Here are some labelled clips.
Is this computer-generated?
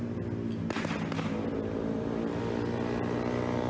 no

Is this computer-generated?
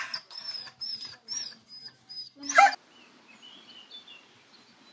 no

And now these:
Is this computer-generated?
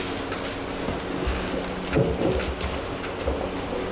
no